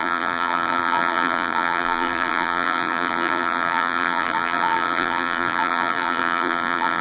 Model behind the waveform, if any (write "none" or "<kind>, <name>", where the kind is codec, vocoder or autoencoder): vocoder, BigVGAN v2